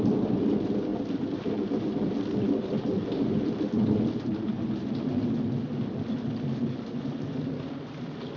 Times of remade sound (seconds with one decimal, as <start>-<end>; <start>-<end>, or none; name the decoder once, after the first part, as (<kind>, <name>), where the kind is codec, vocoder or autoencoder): none